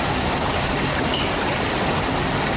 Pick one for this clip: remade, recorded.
remade